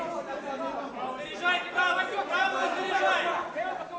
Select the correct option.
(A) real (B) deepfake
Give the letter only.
A